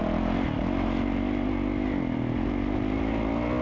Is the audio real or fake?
real